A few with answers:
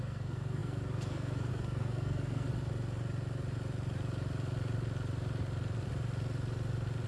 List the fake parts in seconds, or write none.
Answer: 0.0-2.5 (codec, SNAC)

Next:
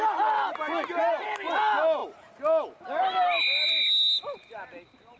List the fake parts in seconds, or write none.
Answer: none

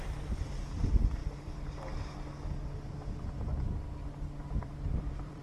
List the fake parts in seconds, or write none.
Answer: 0.0-1.2 (vocoder, BigVGAN v2); 4.4-5.4

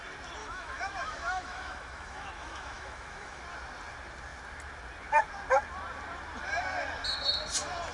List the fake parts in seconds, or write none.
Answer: 0.4-3.4 (autoencoder, DAC-VAE)

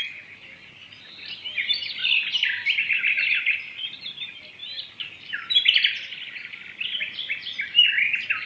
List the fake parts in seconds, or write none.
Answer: none

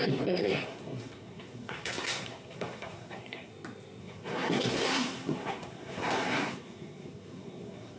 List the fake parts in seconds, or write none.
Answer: 0.0-3.5 (codec, SNAC); 4.0-8.0